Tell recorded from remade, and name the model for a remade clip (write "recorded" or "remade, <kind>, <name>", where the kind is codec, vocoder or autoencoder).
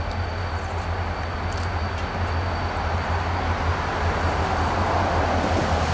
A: recorded